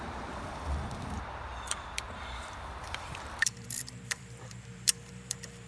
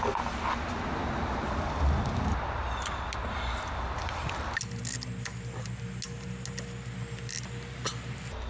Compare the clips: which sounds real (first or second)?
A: second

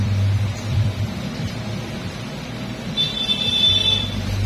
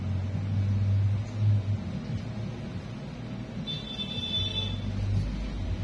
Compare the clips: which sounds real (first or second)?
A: second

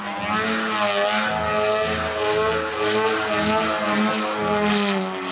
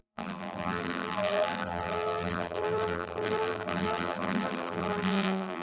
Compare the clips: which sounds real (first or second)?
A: first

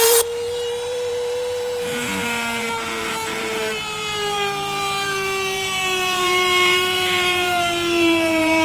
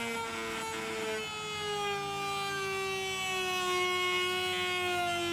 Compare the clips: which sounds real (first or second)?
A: second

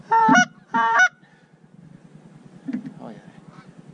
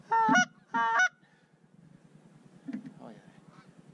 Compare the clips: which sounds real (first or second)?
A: second